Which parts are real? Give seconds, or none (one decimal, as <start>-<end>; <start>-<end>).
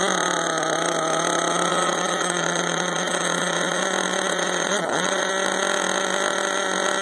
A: 0.0-1.7; 3.8-4.3; 5.3-7.0